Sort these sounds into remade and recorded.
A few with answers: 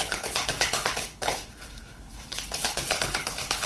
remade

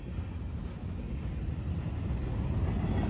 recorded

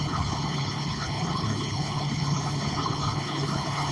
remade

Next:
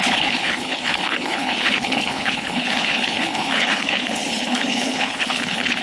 remade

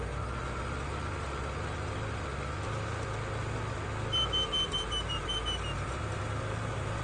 recorded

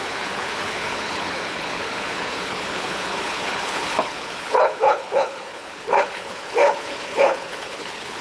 remade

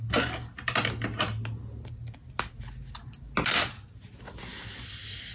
recorded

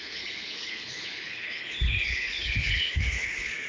remade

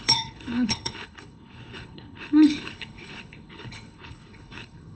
remade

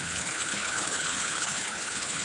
remade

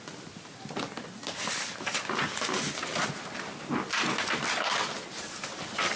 recorded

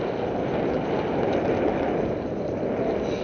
recorded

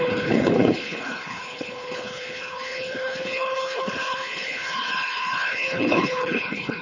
remade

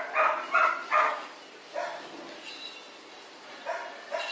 recorded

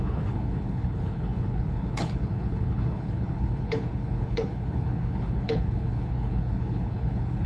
remade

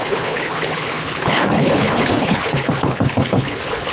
remade